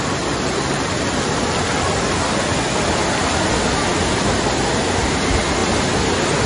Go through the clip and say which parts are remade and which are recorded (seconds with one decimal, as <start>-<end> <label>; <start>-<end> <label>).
0.0-6.5 recorded